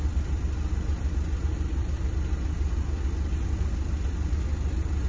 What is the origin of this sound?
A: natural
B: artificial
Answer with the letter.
A